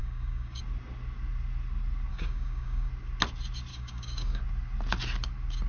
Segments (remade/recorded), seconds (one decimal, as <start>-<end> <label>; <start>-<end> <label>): 0.0-0.6 remade; 0.6-2.1 recorded; 2.1-2.9 remade; 2.9-3.7 recorded; 3.7-4.4 remade; 4.4-5.7 recorded